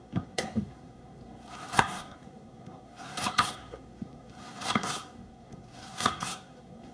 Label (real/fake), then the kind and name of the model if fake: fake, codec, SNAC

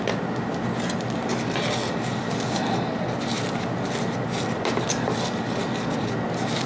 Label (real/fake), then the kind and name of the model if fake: real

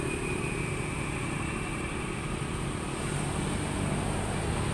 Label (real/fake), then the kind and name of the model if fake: real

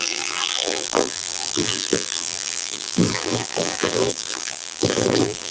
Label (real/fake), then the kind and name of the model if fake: fake, vocoder, BigVGAN v2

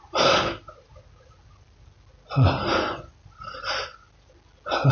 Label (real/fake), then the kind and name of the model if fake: real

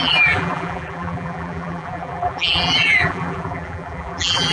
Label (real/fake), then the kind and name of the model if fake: fake, vocoder, BigVGAN v2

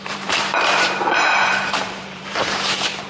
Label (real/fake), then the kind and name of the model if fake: fake, vocoder, BigVGAN v2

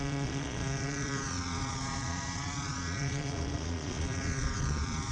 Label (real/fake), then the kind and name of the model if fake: fake, vocoder, Vocos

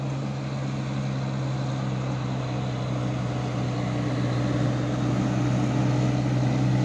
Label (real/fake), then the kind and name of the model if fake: real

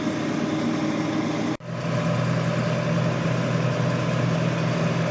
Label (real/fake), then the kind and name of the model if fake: real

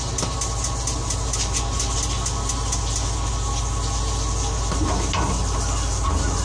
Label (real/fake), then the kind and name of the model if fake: real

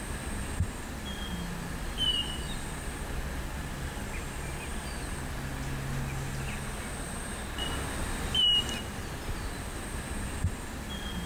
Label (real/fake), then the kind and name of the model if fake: real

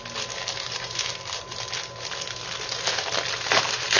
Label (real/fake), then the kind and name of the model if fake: real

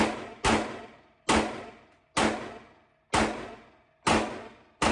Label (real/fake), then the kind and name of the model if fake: real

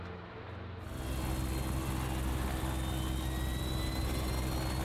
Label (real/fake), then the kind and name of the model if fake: real